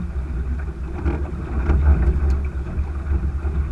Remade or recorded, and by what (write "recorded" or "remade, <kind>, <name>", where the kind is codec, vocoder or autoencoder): recorded